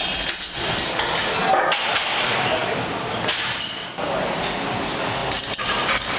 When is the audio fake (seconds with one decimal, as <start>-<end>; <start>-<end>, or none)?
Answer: none